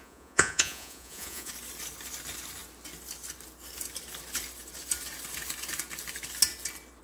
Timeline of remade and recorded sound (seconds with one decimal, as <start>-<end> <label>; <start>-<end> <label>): 0.0-1.5 remade; 1.5-7.0 recorded